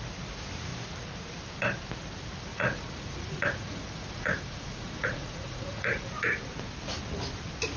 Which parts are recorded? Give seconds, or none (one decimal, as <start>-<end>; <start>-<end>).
0.0-2.5; 6.1-7.8